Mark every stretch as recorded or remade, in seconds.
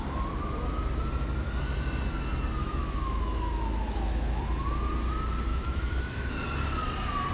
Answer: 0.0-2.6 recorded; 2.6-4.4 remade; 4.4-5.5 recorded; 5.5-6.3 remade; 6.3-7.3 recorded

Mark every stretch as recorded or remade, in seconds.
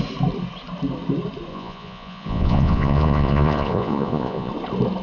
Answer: 0.0-1.5 recorded; 1.5-4.5 remade; 4.5-5.0 recorded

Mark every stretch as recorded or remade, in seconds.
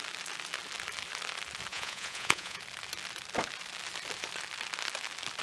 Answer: 0.0-1.7 recorded; 1.7-2.6 remade; 2.6-5.4 recorded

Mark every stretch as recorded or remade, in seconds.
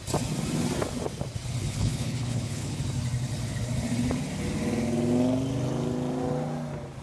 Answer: 0.0-1.6 recorded; 1.6-2.8 remade; 2.8-7.0 recorded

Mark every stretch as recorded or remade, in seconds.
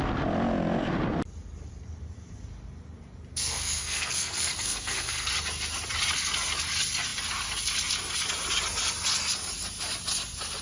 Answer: 0.0-3.3 recorded; 3.3-5.3 remade; 5.3-10.6 recorded